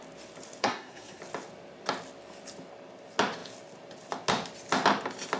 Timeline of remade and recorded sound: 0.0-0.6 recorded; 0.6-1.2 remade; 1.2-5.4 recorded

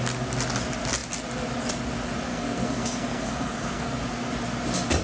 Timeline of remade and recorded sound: 0.0-2.3 recorded; 2.3-4.0 remade; 4.0-5.0 recorded

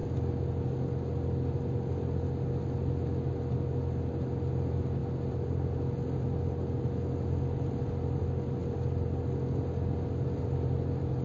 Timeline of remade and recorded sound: 0.0-11.2 recorded

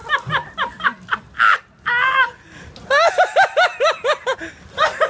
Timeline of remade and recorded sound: 0.0-5.1 recorded

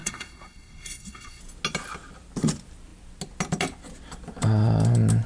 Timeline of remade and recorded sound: 0.0-1.4 remade; 1.4-5.3 recorded

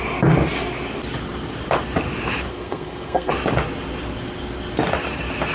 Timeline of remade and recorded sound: 0.0-2.5 recorded; 2.5-3.3 remade; 3.3-5.5 recorded